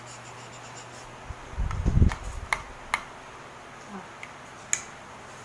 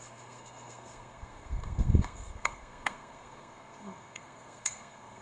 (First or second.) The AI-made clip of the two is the second